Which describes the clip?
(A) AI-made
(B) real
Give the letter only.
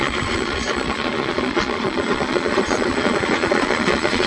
A